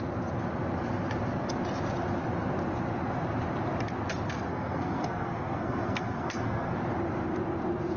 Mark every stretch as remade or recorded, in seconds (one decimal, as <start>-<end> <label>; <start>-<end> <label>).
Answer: 0.0-4.5 recorded; 4.5-6.7 remade; 6.7-8.0 recorded

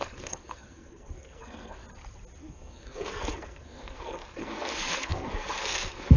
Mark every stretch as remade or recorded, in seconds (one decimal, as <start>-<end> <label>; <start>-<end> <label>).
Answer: 0.0-1.8 remade; 1.8-2.4 recorded; 2.4-6.2 remade

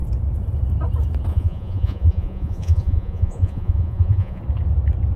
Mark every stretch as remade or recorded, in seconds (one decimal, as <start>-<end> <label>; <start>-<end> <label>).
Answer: 0.0-1.3 recorded; 1.3-4.4 remade; 4.4-5.2 recorded

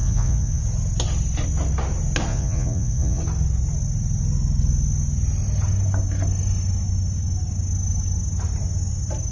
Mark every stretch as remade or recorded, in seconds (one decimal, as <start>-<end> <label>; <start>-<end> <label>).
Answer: 0.0-0.6 remade; 0.6-2.3 recorded; 2.3-3.2 remade; 3.2-9.3 recorded

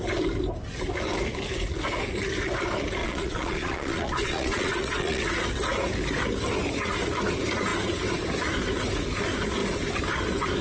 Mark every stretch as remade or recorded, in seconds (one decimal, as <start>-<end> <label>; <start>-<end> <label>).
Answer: 0.0-3.0 recorded; 3.0-5.2 remade; 5.2-10.6 recorded